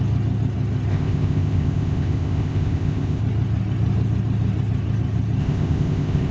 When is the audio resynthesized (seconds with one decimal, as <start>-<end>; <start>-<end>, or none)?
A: 0.9-3.2; 5.4-6.3